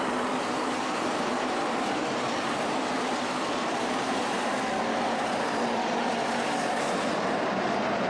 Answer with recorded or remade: remade